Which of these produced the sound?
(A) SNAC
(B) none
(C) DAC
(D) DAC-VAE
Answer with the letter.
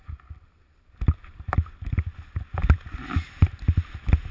B